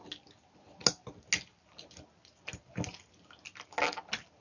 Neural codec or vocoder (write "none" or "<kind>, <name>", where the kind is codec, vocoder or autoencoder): none